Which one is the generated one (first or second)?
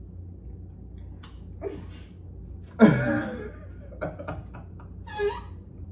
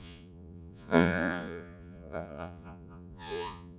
second